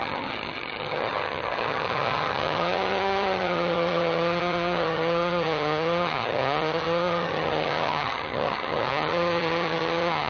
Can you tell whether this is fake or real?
fake